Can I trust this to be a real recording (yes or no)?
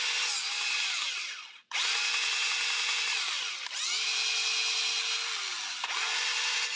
yes